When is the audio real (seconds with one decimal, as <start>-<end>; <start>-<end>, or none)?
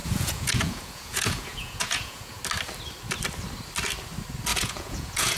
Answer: 2.4-4.5